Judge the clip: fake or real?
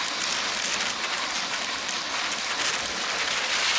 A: real